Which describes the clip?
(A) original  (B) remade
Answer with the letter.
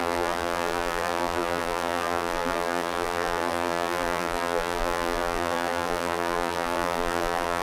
B